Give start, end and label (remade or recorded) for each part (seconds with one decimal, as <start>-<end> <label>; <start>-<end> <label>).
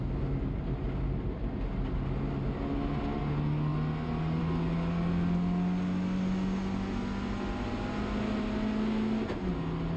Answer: 0.0-10.0 recorded